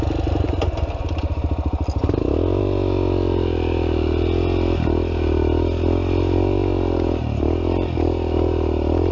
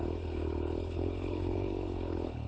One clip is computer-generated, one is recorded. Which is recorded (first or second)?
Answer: first